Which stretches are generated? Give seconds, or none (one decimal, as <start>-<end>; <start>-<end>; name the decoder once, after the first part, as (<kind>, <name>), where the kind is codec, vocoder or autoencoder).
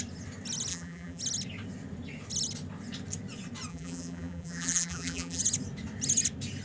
0.7-1.2 (vocoder, BigVGAN v2); 3.7-5.4